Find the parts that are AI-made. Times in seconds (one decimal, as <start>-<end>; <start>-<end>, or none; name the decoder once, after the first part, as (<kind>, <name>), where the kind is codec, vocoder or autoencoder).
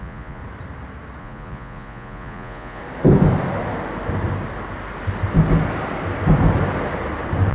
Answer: 0.0-0.4 (vocoder, Vocos); 1.2-2.8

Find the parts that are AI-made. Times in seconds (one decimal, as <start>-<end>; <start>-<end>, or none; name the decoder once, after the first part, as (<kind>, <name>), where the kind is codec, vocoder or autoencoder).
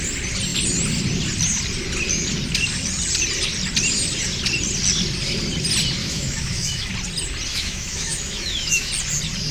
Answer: 6.0-6.9 (autoencoder, DAC-VAE); 7.5-8.9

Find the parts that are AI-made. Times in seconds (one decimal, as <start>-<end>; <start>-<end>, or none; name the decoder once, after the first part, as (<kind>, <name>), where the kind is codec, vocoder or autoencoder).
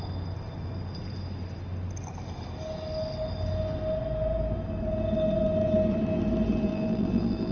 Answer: 6.7-7.5 (vocoder, BigVGAN v2)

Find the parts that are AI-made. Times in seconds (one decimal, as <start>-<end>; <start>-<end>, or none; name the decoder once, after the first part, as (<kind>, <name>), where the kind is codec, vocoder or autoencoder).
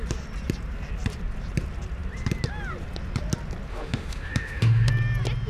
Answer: 3.7-4.9 (autoencoder, DAC-VAE)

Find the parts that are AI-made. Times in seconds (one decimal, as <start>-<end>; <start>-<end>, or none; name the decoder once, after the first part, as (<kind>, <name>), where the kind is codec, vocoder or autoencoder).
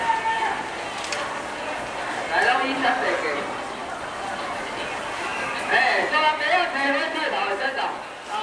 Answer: none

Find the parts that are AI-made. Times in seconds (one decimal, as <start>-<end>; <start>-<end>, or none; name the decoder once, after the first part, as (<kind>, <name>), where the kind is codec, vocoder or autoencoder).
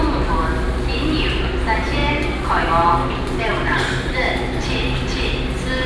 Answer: none